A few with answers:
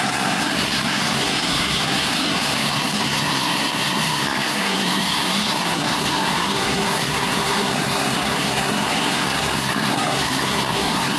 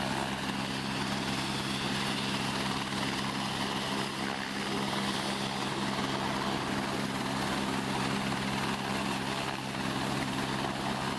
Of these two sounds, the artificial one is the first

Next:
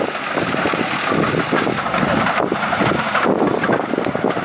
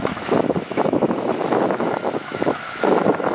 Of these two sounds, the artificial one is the second